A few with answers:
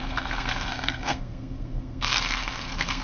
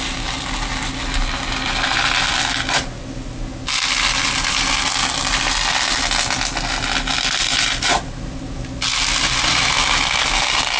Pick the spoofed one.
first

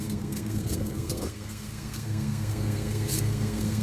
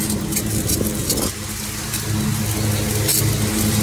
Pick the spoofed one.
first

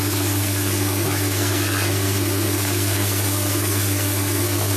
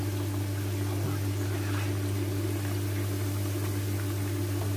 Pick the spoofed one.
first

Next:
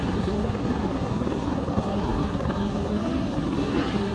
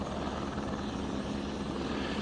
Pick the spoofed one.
first